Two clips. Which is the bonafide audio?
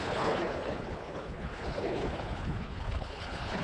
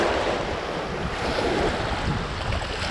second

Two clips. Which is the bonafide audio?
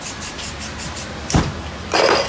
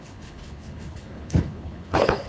first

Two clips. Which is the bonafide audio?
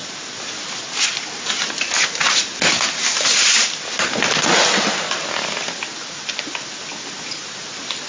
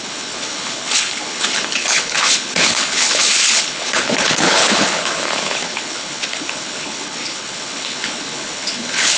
first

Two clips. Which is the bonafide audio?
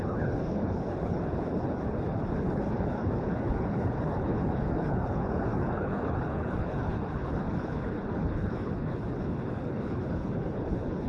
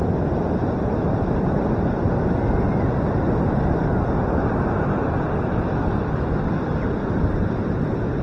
second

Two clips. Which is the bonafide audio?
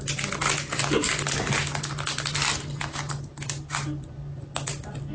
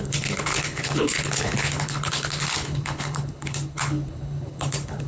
first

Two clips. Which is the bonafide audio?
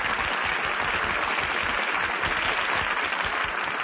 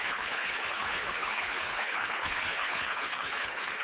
first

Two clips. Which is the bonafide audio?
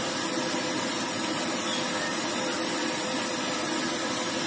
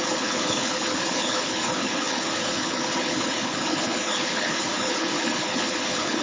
first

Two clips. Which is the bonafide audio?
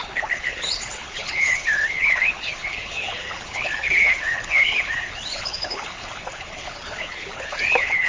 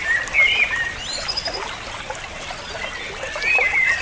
second